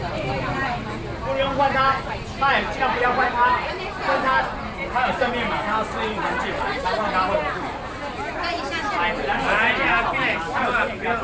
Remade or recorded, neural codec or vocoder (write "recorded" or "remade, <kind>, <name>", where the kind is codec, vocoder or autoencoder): recorded